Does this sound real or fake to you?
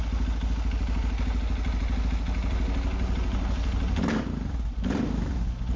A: real